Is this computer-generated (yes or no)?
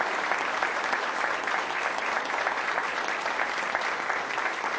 no